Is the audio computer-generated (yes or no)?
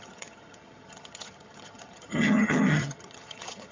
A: yes